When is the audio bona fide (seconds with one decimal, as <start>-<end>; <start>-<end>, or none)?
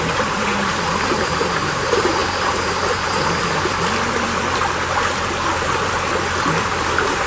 2.2-6.6